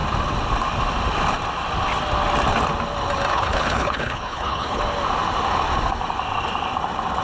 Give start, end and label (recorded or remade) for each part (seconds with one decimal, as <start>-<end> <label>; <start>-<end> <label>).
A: 0.0-3.3 recorded; 3.3-4.8 remade; 4.8-7.2 recorded